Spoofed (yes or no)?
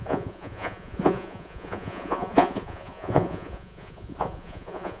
yes